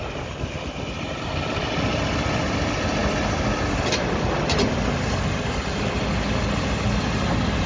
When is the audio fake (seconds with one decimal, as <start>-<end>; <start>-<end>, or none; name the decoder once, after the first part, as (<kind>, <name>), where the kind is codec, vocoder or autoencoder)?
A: none